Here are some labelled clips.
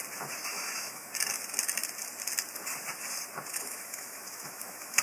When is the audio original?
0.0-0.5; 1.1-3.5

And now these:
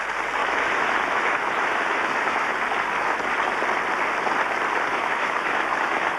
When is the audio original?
0.0-0.4; 2.5-4.9

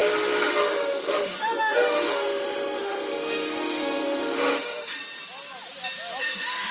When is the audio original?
5.0-6.2

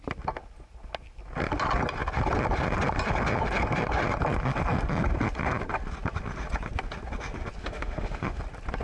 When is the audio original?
0.0-7.6; 8.4-8.8

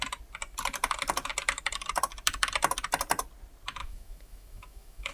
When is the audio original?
0.0-3.8

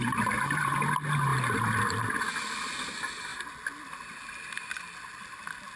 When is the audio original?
0.0-5.8

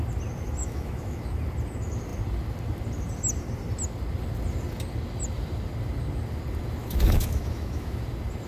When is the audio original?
0.0-0.6; 1.2-6.8; 8.0-8.5